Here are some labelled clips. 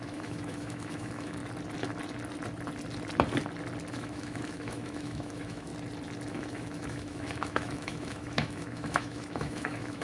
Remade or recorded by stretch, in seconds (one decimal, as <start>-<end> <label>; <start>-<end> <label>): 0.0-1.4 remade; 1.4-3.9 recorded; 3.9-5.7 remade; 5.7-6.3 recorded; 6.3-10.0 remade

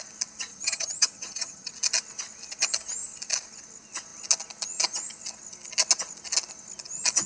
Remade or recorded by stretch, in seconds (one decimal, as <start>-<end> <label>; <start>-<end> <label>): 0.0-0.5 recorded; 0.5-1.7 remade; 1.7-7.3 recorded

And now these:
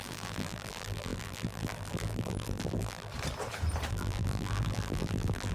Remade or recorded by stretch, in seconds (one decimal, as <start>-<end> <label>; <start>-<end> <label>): 0.0-3.1 remade; 3.1-3.9 recorded; 3.9-5.5 remade

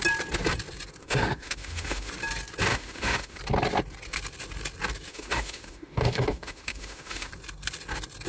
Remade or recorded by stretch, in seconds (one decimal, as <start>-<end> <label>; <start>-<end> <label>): 0.0-1.0 recorded; 1.0-2.1 remade; 2.1-2.7 recorded; 2.7-3.4 remade; 3.4-5.1 recorded; 5.1-7.3 remade; 7.3-8.3 recorded